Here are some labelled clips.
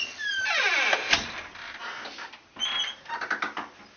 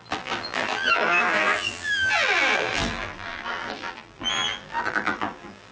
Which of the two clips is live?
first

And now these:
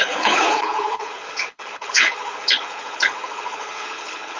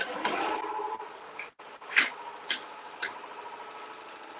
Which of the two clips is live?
second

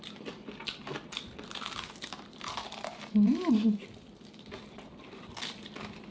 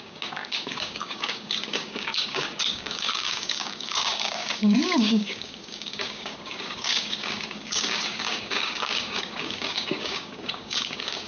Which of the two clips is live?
first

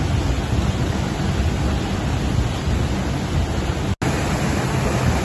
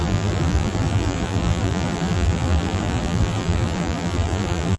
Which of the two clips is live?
first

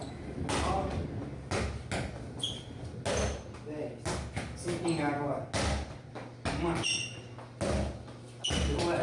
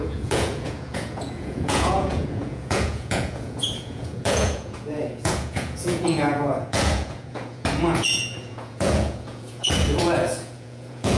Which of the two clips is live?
first